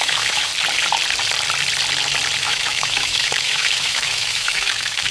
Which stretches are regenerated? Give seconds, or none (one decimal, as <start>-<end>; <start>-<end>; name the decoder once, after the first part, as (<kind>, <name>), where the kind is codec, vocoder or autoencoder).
0.0-0.5 (autoencoder, DAC-VAE); 2.4-5.1